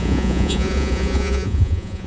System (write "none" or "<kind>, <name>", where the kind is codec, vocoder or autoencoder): vocoder, Vocos